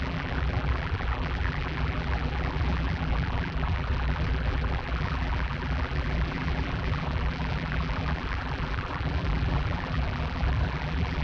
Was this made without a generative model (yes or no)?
no